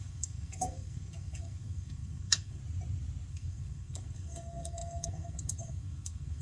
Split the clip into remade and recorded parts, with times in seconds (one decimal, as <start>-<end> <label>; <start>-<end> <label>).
0.0-2.6 remade; 2.6-3.3 recorded; 3.3-6.4 remade